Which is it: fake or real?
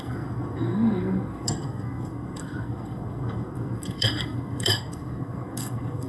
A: fake